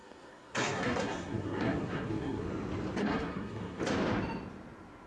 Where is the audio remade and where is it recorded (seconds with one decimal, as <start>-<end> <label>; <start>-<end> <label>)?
0.0-2.5 remade; 2.5-3.0 recorded; 3.0-3.8 remade; 3.8-5.1 recorded